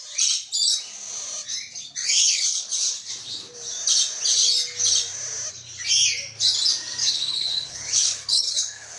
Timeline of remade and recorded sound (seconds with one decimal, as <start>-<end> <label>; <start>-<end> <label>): 0.0-2.0 recorded; 2.0-3.1 remade; 3.1-7.0 recorded; 7.0-9.0 remade